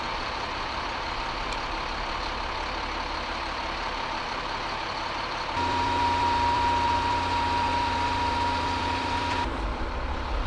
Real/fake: fake